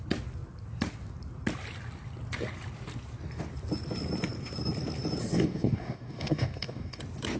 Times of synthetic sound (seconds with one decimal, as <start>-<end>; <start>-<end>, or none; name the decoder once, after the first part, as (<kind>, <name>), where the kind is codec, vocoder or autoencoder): 5.2-7.0 (codec, DAC)

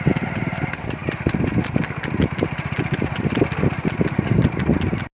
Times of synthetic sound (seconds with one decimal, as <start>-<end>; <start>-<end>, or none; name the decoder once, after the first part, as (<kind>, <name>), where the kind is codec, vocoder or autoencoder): none

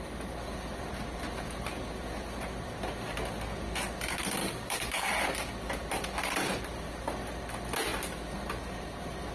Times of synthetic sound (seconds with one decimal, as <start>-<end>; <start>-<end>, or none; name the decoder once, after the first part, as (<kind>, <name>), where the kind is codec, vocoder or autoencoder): 4.4-5.1 (codec, DAC)

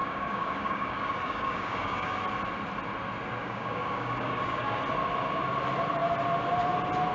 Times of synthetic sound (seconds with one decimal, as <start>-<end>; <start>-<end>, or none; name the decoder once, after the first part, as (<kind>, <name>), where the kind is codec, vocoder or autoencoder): 0.0-2.2 (codec, DAC); 3.4-4.8

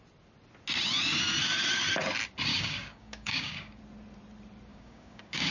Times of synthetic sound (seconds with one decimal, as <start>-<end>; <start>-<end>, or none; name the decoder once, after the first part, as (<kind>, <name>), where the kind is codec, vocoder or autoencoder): 2.5-3.8 (codec, DAC); 4.7-5.5

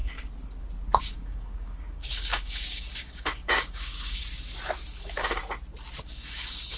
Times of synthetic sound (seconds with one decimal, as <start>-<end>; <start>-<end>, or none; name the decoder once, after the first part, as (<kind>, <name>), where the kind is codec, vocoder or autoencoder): 1.0-4.2 (codec, DAC); 5.0-5.4; 6.0-6.8

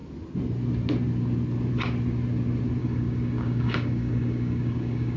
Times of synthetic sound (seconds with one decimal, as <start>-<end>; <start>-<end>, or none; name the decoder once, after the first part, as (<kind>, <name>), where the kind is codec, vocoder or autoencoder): 2.8-5.2 (codec, DAC)

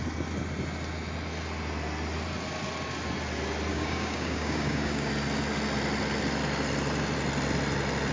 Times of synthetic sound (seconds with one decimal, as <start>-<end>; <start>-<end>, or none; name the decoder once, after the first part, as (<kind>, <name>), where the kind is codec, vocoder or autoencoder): 3.7-5.1 (codec, DAC)